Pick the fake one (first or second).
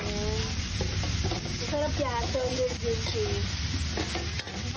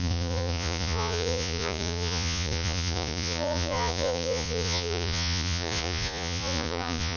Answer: second